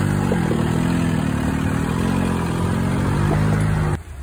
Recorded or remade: recorded